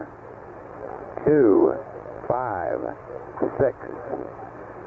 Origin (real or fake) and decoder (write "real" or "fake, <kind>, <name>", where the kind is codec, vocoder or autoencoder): fake, vocoder, WaveNeXt